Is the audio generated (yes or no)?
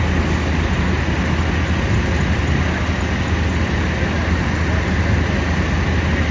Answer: no